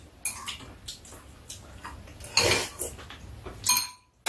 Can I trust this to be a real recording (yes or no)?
yes